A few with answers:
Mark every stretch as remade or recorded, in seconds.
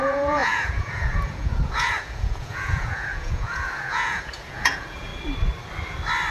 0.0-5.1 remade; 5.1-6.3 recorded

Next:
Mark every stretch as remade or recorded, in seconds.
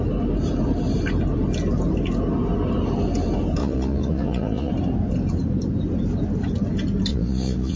0.0-3.6 recorded; 3.6-4.7 remade; 4.7-7.1 recorded; 7.1-7.8 remade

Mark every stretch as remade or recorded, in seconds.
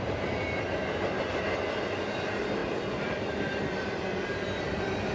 0.0-5.1 recorded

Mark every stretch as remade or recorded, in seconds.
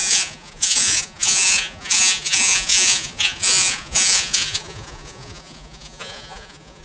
0.0-6.8 remade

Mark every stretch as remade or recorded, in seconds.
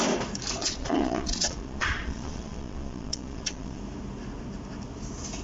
0.0-0.6 recorded; 0.6-3.8 remade; 3.8-5.4 recorded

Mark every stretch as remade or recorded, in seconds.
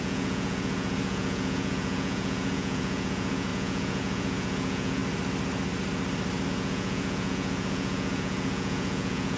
0.0-5.0 remade; 5.0-6.5 recorded; 6.5-9.4 remade